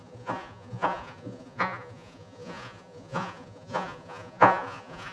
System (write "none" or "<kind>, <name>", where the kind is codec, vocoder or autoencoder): vocoder, Vocos